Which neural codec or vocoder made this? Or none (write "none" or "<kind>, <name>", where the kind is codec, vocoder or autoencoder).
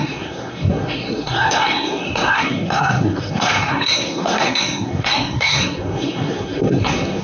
codec, SNAC